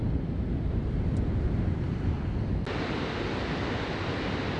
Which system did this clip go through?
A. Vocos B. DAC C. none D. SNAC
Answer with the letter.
C